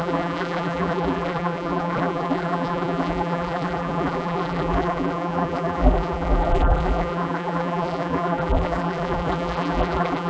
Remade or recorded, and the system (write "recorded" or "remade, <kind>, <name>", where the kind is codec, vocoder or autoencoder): remade, vocoder, BigVGAN v2